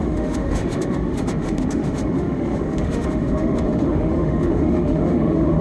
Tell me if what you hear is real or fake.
fake